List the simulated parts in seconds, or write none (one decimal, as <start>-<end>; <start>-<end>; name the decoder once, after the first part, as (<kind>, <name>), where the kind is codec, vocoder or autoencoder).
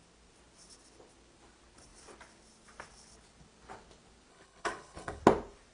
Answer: 4.3-5.2 (codec, HILCodec)